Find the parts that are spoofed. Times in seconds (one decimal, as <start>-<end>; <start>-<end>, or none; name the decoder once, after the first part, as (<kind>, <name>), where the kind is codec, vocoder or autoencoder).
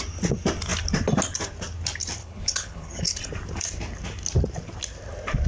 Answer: 2.2-3.2 (codec, HILCodec)